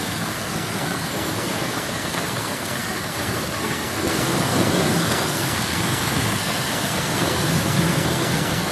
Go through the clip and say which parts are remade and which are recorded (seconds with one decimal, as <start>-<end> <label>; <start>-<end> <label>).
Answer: 0.0-8.7 remade